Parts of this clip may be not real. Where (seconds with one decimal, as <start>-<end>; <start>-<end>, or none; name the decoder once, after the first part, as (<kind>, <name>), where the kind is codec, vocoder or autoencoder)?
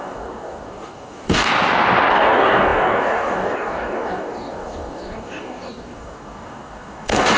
0.0-1.5 (codec, DAC); 2.1-7.4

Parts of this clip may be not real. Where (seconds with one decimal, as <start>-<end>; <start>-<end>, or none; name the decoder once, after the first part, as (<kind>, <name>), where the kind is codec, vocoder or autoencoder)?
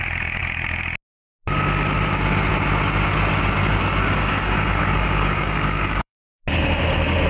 3.6-6.4 (codec, DAC)